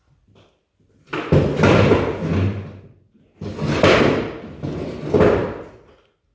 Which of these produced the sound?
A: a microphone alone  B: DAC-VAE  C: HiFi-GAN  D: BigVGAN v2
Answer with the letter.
A